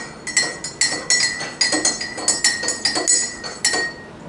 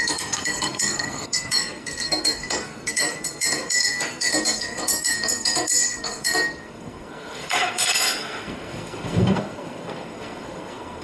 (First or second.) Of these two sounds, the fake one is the second